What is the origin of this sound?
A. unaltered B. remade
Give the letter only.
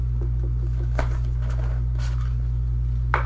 A